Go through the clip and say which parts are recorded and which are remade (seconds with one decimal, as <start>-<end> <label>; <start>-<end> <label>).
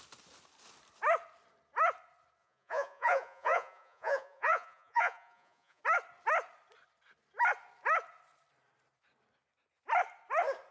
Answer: 0.0-2.4 recorded; 2.4-5.8 remade; 5.8-10.7 recorded